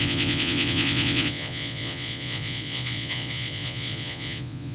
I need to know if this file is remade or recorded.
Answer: remade